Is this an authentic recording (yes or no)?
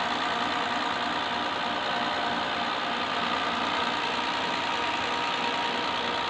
yes